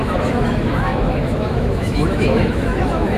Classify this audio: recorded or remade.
remade